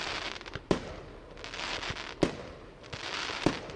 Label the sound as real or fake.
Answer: real